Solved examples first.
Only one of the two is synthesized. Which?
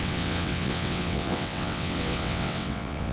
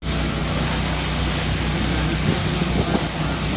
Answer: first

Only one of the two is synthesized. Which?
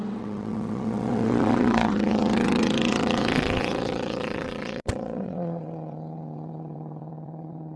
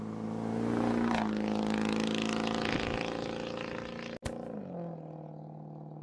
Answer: first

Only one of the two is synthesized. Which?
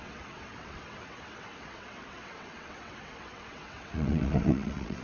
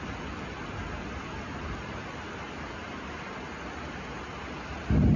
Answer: first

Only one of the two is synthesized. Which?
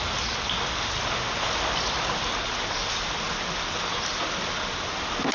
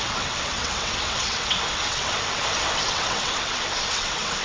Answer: second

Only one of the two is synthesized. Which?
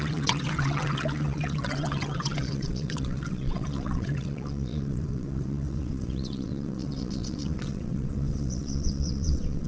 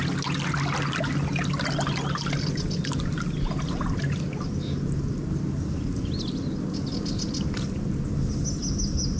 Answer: first